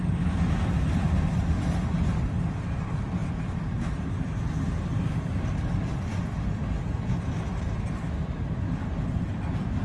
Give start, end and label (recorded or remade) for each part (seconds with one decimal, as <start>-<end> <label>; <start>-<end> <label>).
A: 0.0-9.8 recorded